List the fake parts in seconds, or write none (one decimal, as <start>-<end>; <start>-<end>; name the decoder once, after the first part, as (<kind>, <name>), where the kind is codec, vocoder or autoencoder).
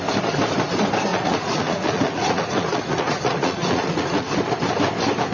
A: 1.1-4.3 (vocoder, Vocos)